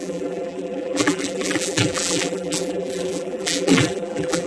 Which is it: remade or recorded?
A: remade